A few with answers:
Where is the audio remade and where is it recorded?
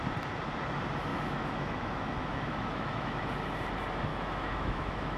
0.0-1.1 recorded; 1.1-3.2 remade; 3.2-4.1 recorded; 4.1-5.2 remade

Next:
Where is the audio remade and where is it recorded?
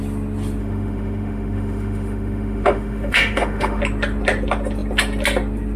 0.0-0.6 recorded; 0.6-3.8 remade; 3.8-5.8 recorded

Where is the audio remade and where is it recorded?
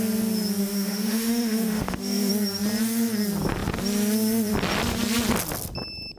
0.0-0.6 recorded; 0.6-2.3 remade; 2.3-6.2 recorded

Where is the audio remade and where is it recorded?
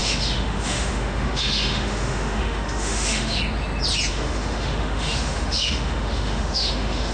0.0-3.4 remade; 3.4-4.1 recorded; 4.1-7.1 remade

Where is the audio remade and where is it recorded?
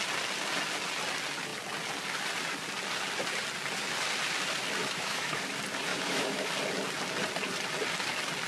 0.0-4.8 recorded; 4.8-5.4 remade; 5.4-5.9 recorded; 5.9-6.5 remade; 6.5-8.5 recorded